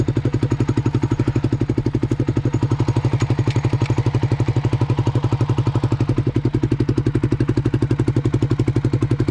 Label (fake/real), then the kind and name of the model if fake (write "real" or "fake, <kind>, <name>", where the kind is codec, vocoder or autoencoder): real